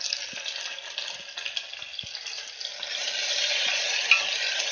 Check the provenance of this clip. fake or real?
real